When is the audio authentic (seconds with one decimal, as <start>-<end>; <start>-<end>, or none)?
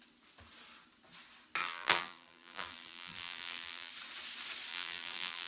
0.0-1.6; 3.9-4.7